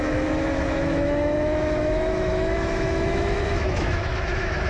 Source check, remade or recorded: remade